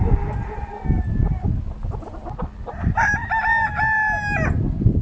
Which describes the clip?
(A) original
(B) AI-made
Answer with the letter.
A